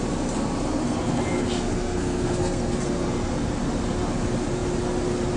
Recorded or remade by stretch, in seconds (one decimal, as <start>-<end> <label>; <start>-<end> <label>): 0.0-0.8 recorded; 0.8-3.3 remade; 3.3-5.4 recorded